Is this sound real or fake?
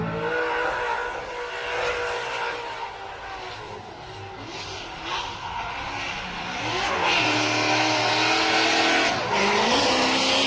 real